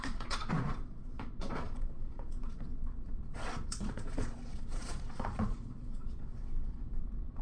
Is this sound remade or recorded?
remade